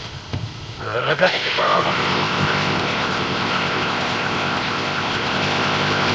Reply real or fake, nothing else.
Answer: fake